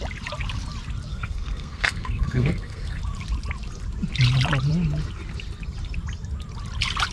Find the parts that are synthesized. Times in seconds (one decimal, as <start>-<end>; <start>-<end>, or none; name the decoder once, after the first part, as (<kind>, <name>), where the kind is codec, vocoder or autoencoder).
1.1-3.0 (codec, SNAC)